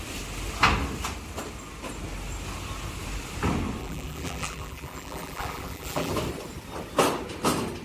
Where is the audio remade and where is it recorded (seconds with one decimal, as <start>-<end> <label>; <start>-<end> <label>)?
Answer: 0.0-3.8 recorded; 3.8-6.1 remade; 6.1-7.8 recorded